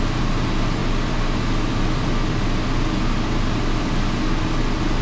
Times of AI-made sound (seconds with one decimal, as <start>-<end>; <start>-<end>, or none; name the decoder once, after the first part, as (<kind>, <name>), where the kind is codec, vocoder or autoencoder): none